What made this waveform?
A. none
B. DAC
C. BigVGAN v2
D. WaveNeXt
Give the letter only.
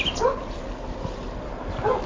A